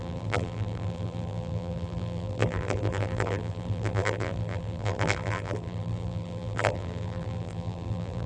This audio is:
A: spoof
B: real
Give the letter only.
A